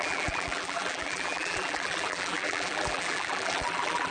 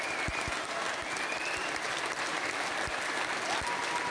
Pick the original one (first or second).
second